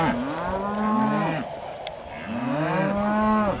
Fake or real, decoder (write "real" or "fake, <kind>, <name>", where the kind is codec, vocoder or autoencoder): real